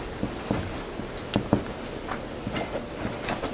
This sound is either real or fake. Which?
real